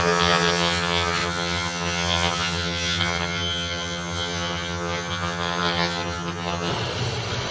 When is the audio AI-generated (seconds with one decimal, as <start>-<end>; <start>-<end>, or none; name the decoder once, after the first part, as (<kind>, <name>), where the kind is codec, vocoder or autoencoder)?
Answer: 0.0-6.7 (vocoder, HiFi-GAN)